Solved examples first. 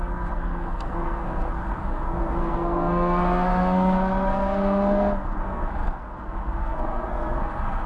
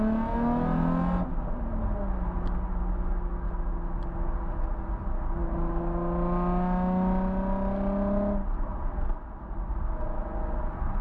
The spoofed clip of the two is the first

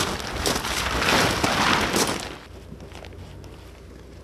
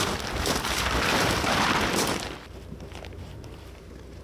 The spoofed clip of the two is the second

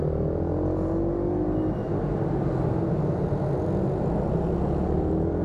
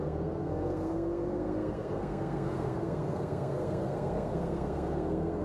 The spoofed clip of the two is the second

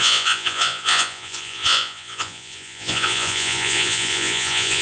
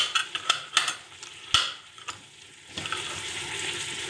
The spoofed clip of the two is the first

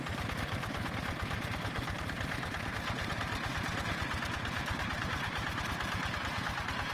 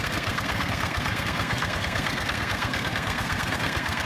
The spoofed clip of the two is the second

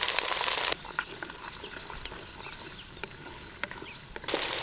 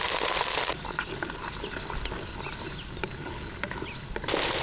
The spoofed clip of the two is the first